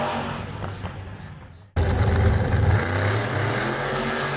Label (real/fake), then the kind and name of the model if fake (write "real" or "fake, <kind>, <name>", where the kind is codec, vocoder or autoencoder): real